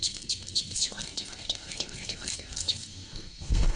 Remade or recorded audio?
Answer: remade